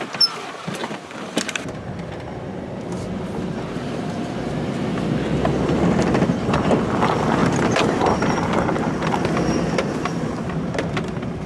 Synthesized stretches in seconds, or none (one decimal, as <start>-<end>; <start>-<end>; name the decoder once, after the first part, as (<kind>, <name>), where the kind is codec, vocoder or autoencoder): 0.8-2.1 (vocoder, BigVGAN v2); 7.4-8.4